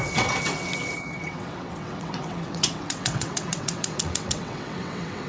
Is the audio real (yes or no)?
no